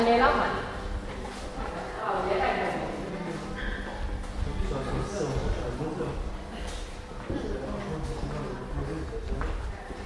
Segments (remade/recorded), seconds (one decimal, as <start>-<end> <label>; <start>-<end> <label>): 0.0-1.5 recorded; 1.5-3.1 remade; 3.1-10.1 recorded

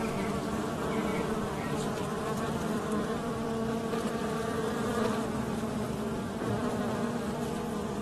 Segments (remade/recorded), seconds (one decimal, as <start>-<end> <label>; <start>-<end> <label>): 0.0-1.1 recorded; 1.1-5.0 remade; 5.0-6.1 recorded; 6.1-6.8 remade; 6.8-8.0 recorded

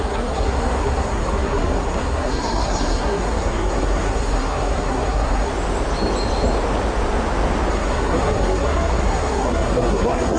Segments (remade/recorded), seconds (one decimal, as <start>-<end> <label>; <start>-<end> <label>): 0.0-5.5 remade; 5.5-7.7 recorded; 7.7-10.4 remade